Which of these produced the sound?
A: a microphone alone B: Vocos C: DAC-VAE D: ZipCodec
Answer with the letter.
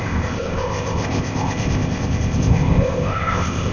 D